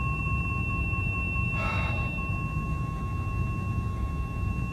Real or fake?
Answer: fake